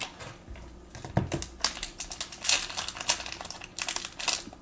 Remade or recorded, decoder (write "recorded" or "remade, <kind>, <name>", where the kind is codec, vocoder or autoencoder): recorded